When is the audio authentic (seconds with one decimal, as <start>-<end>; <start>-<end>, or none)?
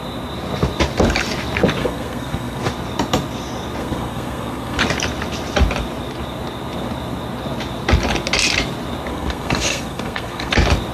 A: 0.0-1.8; 2.7-3.8; 4.8-9.1; 10.5-10.9